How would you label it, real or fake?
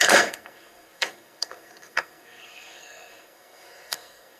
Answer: fake